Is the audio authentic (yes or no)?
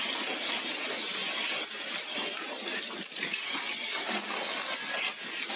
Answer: yes